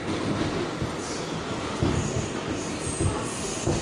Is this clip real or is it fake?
real